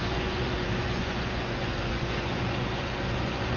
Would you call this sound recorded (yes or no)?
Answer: no